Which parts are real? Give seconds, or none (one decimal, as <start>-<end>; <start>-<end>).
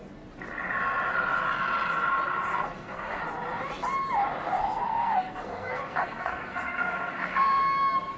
0.0-2.5; 3.2-4.6; 7.6-8.2